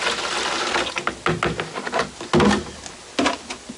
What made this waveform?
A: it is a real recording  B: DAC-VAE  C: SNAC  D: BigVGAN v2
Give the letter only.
A